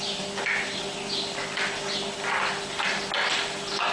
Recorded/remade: recorded